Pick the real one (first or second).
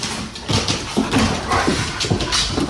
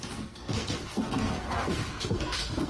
first